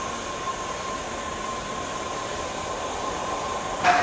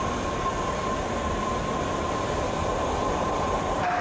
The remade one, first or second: second